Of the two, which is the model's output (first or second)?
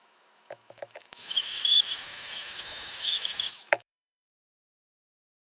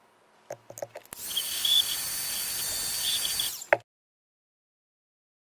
first